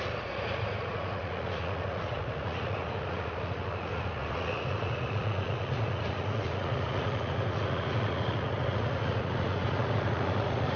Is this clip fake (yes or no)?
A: yes